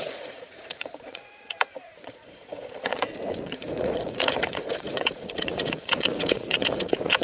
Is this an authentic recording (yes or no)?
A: no